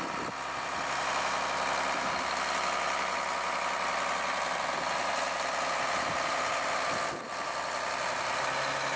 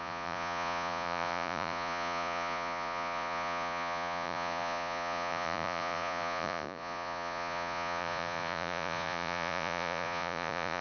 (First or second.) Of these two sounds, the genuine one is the first